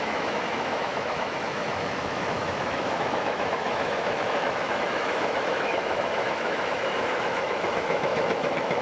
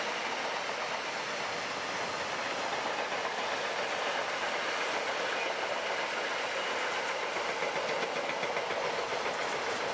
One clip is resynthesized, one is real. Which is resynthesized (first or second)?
first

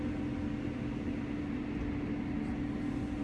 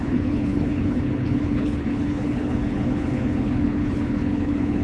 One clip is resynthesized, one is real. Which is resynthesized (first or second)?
second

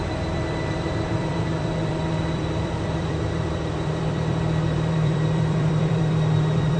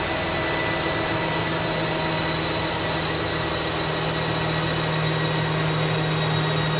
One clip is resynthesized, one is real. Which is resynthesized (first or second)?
first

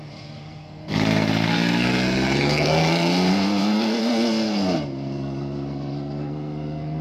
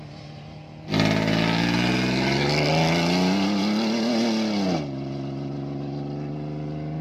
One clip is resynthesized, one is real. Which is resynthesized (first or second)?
first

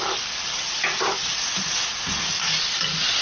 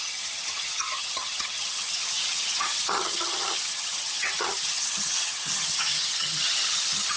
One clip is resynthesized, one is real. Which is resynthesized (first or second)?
second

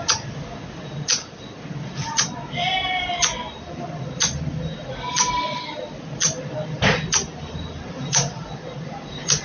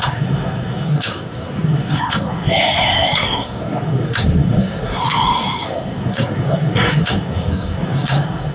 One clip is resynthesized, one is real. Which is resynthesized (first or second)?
second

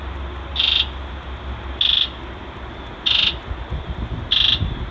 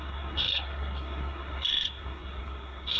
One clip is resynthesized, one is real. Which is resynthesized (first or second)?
second